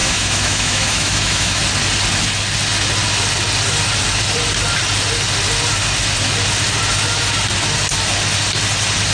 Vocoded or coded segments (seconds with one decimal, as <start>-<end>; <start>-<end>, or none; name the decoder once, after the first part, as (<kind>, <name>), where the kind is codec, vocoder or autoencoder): 0.0-1.6 (autoencoder, DAC-VAE)